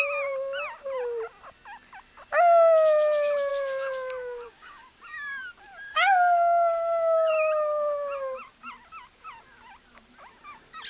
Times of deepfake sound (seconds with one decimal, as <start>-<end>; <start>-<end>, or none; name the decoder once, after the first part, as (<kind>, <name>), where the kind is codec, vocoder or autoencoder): 3.5-5.0 (codec, DAC); 5.9-7.3